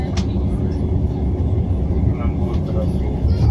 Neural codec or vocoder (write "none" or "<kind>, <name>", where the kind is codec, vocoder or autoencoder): none